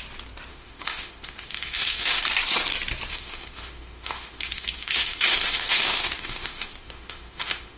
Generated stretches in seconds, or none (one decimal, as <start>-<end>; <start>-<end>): 0.5-2.2; 3.1-7.8